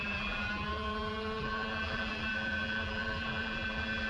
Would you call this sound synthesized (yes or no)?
yes